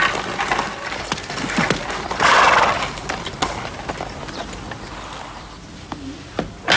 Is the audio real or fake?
real